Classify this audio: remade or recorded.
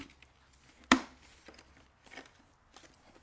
recorded